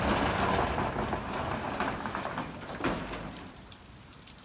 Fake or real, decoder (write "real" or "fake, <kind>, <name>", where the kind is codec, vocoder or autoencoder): fake, vocoder, BigVGAN v2